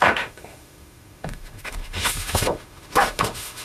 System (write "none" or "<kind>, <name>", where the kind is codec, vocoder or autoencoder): autoencoder, DAC-VAE